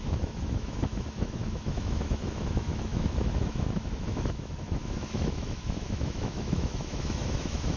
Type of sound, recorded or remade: remade